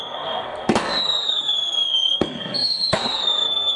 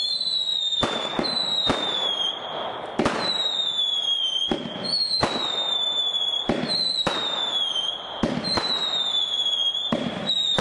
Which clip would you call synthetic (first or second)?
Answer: first